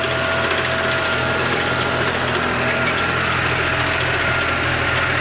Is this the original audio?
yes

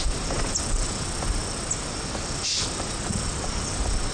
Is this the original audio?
yes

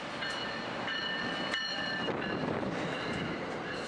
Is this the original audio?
yes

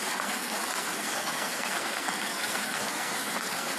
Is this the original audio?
no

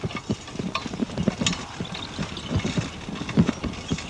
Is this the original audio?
yes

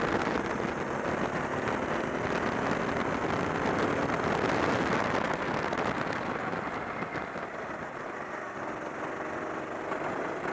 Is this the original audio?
yes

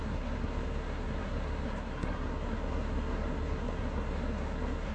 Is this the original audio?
no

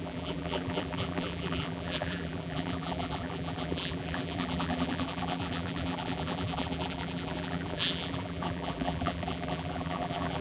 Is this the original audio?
no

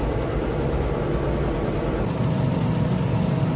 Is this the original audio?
yes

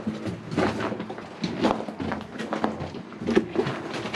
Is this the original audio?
yes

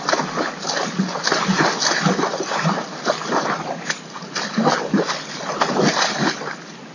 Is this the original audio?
yes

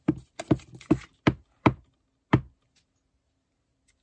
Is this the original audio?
yes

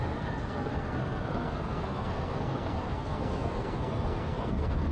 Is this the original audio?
no